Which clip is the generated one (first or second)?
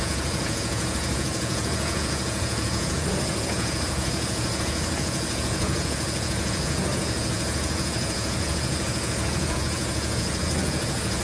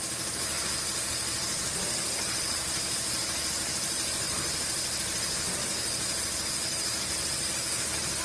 first